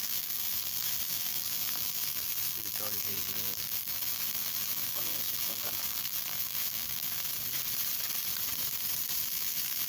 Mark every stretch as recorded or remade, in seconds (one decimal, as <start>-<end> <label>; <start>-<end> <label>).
0.0-7.3 remade; 7.3-9.2 recorded; 9.2-9.9 remade